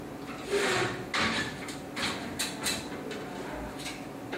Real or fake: real